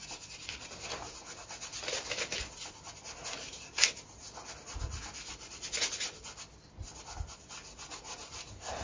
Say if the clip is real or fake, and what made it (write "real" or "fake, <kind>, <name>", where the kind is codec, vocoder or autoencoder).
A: real